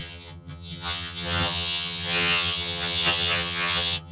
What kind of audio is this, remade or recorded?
remade